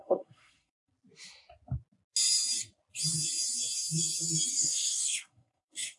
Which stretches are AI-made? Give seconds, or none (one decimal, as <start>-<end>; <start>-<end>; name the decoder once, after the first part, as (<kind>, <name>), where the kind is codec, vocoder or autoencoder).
0.0-0.9 (codec, SNAC); 4.5-6.0